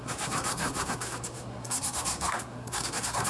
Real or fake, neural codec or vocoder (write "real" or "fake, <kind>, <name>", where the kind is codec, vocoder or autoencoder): fake, codec, SNAC